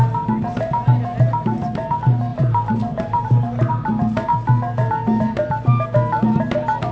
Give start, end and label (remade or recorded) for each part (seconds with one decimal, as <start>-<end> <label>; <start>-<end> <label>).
0.0-2.3 recorded; 2.3-3.7 remade; 3.7-6.9 recorded